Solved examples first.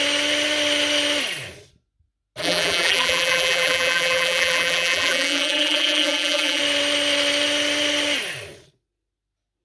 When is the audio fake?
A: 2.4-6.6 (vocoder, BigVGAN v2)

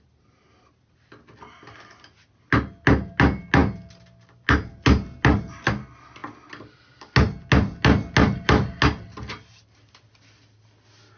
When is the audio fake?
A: none

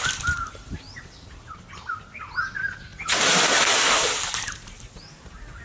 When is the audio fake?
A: none